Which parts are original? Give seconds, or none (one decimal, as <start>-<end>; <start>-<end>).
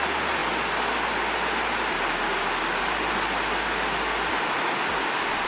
0.0-5.5